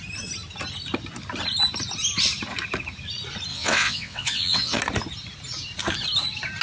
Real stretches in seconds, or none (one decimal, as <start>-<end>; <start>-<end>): 0.0-3.5; 4.8-6.6